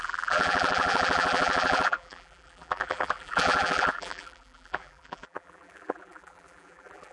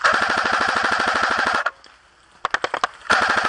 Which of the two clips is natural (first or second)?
second